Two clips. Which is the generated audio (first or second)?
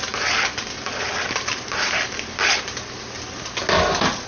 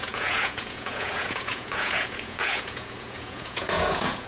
second